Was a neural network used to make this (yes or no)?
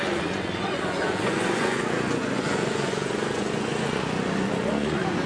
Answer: yes